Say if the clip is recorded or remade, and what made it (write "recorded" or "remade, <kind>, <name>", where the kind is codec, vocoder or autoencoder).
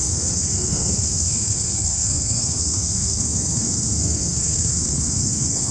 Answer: remade, codec, SNAC